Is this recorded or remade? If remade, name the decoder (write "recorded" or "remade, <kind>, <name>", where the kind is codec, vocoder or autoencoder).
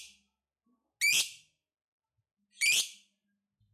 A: recorded